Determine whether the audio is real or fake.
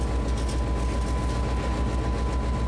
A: real